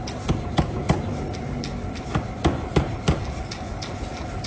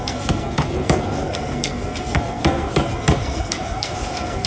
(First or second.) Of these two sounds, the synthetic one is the second